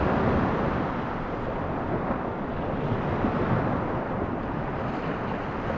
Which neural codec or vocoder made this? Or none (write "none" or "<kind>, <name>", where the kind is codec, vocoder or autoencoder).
none